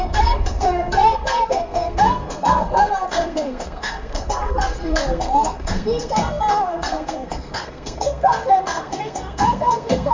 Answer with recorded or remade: remade